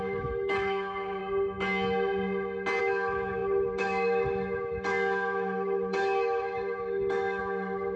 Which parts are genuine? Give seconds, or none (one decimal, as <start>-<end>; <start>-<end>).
1.2-2.8